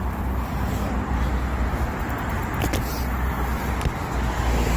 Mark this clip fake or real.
real